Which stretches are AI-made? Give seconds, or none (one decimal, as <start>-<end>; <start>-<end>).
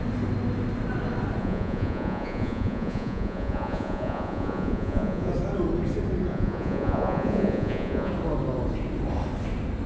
1.4-5.3; 6.3-8.1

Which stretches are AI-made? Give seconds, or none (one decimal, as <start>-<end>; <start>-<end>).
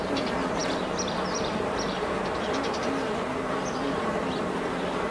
0.0-5.1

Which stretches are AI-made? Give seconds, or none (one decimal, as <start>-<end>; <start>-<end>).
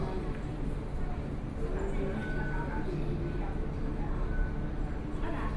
0.5-1.5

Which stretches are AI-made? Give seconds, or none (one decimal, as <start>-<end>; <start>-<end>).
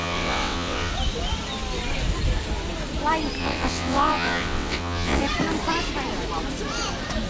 0.0-0.9; 3.4-5.2